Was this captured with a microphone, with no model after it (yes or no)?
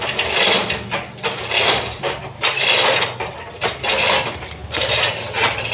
yes